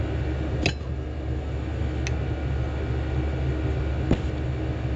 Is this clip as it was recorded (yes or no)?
yes